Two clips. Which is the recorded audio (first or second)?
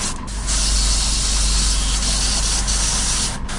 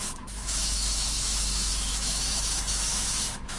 first